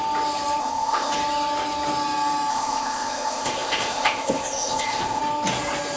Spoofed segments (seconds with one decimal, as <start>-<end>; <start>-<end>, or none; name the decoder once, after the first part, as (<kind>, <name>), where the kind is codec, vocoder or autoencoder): 0.6-1.1 (codec, ZipCodec); 2.5-5.2